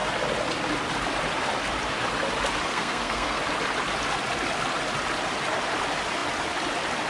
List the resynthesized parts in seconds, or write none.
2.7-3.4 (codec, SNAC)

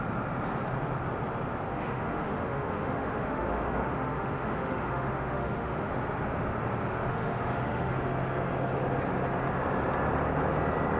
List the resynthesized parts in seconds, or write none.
1.7-5.9 (autoencoder, DAC-VAE); 7.1-7.9

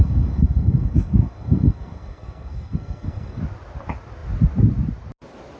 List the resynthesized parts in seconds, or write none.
0.0-3.4 (codec, SNAC)

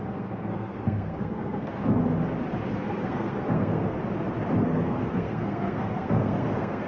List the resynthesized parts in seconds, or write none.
0.0-1.8 (codec, SNAC); 2.8-4.0; 4.6-6.9

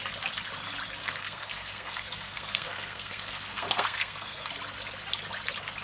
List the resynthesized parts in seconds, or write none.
1.0-4.5 (codec, SNAC)